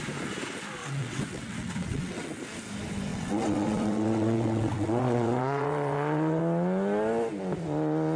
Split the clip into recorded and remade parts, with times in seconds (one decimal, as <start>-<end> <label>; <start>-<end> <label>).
0.0-0.8 recorded; 0.8-2.4 remade; 2.4-3.1 recorded; 3.1-6.4 remade; 6.4-8.2 recorded